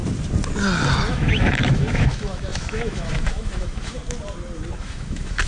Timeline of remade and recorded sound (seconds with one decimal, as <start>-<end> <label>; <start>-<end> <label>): 0.0-1.1 recorded; 1.1-4.0 remade; 4.0-4.8 recorded; 4.8-5.5 remade